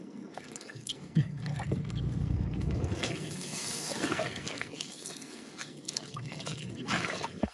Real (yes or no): no